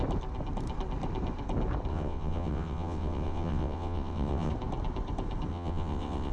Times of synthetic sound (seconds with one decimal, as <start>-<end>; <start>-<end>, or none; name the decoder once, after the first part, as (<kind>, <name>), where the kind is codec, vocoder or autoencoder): 1.9-4.5 (vocoder, WaveNeXt); 5.5-6.3